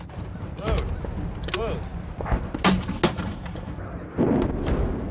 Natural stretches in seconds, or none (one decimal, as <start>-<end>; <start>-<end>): 0.0-5.1

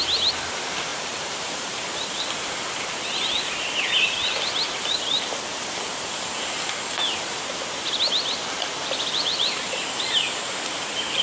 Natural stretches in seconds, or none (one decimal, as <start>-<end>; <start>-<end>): 0.0-0.9; 2.2-11.2

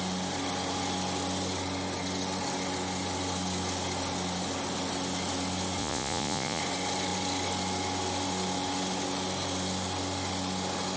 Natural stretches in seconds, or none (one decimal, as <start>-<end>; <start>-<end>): 0.0-5.8; 6.6-11.0

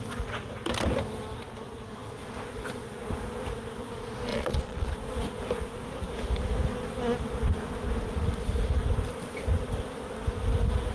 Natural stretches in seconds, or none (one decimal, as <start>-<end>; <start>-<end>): 0.0-4.3; 4.9-10.9

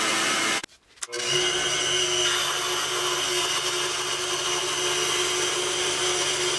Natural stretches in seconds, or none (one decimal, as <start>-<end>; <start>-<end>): 0.0-6.6

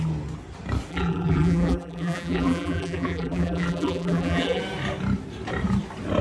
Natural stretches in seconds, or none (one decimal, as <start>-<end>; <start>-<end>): 0.0-0.9; 4.6-6.2

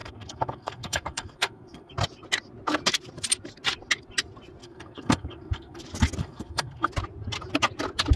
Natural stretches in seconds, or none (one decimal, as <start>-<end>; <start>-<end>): 1.9-4.6; 5.8-6.2; 6.9-8.2

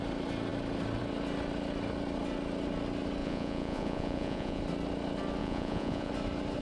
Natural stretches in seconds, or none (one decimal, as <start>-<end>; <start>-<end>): 0.0-3.2; 4.6-5.4; 6.1-6.6